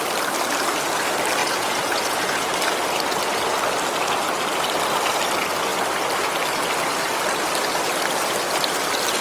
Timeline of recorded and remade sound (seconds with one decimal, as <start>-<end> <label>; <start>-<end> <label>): 0.0-1.4 recorded; 1.4-2.5 remade; 2.5-9.2 recorded